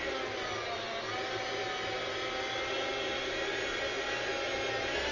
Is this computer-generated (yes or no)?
no